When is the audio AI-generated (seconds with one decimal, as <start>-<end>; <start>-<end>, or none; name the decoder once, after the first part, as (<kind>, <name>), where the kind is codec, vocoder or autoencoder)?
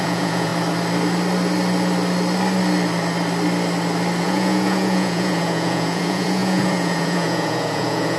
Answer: 0.0-0.5 (vocoder, Vocos); 4.2-8.2